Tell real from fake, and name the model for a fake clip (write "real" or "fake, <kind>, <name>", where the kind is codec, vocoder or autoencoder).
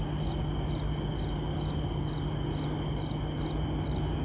real